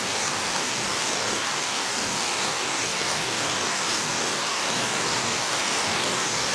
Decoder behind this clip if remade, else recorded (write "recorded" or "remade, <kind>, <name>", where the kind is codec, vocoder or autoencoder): remade, codec, DAC